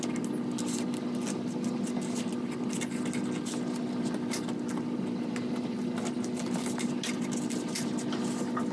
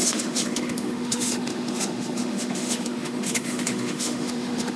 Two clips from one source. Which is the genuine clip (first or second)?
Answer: first